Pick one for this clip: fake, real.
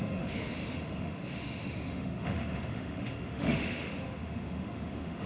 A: fake